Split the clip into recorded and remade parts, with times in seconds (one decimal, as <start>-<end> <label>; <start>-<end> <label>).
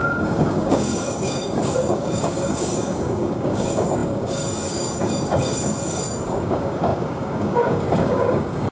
0.0-8.7 remade